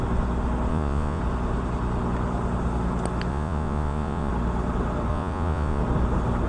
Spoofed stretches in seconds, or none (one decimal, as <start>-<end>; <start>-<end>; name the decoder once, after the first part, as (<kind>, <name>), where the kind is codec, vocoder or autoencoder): 0.7-1.2 (vocoder, Vocos); 3.3-4.3; 5.1-5.8